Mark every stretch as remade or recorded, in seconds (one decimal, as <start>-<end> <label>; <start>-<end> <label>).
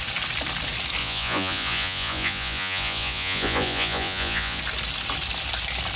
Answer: 0.0-1.0 recorded; 1.0-4.6 remade; 4.6-6.0 recorded